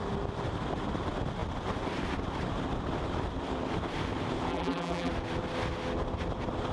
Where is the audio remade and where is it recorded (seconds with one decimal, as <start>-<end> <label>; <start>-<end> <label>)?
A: 0.0-4.5 recorded; 4.5-5.1 remade; 5.1-6.7 recorded

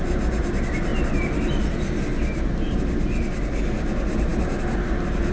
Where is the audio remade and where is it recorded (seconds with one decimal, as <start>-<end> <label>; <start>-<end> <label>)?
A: 0.0-5.3 recorded

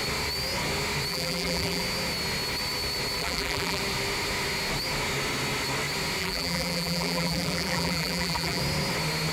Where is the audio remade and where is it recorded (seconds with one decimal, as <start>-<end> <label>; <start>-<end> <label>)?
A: 0.0-1.1 recorded; 1.1-1.8 remade; 1.8-3.2 recorded; 3.2-3.8 remade; 3.8-6.2 recorded; 6.2-8.6 remade; 8.6-9.3 recorded